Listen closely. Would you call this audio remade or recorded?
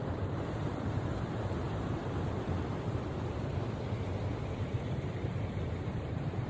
remade